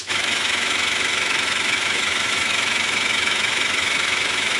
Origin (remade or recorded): remade